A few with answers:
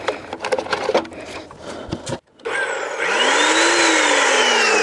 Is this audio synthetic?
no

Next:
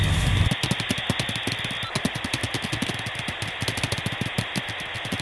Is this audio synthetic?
no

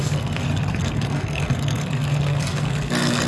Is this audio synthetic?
yes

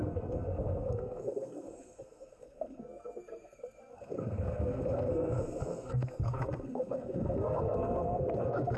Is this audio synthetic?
yes